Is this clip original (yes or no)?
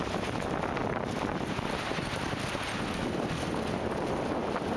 yes